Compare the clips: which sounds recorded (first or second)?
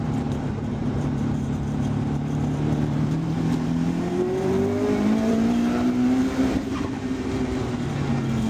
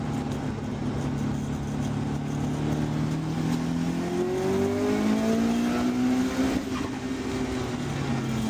second